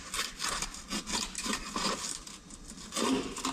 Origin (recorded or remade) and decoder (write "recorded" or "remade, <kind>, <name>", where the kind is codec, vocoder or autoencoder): recorded